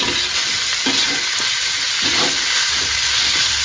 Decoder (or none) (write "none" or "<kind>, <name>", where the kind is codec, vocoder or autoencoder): none